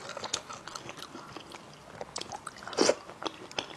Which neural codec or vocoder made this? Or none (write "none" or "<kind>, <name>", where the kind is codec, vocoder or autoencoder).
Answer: none